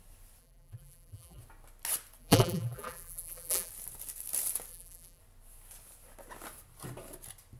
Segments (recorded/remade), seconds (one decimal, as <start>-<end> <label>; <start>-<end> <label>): 0.0-0.4 recorded; 0.4-1.4 remade; 1.4-2.2 recorded; 2.2-3.7 remade; 3.7-4.7 recorded; 4.7-5.2 remade; 5.2-7.6 recorded